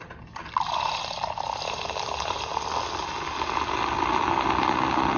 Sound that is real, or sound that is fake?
real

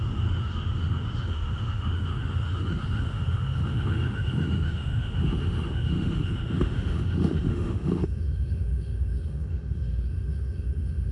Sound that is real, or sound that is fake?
fake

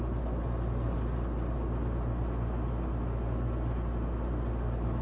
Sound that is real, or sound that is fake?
real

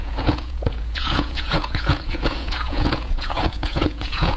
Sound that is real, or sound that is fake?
fake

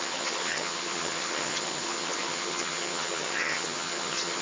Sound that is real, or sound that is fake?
fake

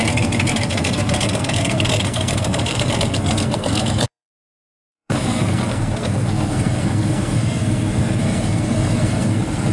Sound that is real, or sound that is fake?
fake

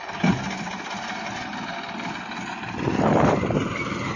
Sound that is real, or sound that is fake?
real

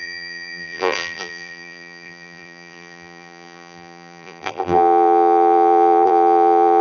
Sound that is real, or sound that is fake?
fake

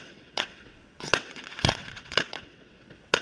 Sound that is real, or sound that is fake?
fake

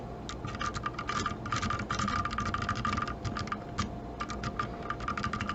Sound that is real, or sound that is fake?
real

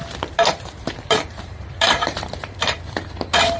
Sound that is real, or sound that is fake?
fake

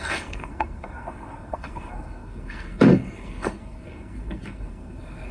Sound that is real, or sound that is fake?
fake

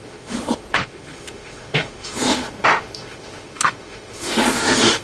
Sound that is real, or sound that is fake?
fake